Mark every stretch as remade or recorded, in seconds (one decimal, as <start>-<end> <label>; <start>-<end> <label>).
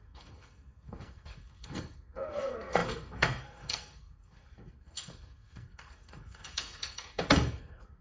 0.0-8.0 remade